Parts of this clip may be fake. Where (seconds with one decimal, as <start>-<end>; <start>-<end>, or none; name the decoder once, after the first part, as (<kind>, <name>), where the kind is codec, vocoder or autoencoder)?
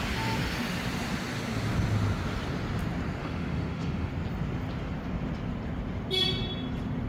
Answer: 3.2-4.1 (autoencoder, DAC-VAE)